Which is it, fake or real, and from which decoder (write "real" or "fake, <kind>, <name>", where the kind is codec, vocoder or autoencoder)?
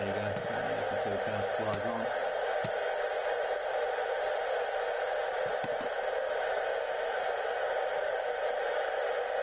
real